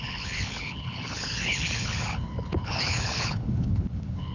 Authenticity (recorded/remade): remade